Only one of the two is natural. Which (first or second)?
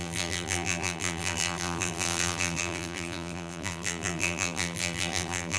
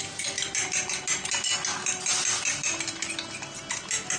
second